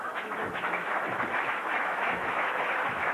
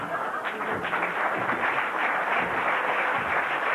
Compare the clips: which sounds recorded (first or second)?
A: second